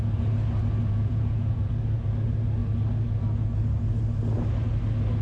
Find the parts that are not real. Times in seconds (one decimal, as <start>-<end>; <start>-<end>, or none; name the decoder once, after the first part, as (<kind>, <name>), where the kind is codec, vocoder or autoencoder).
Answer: 1.0-1.7 (vocoder, Vocos)